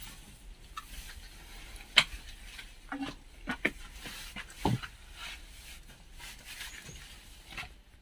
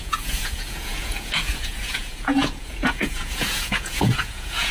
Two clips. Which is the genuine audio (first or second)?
first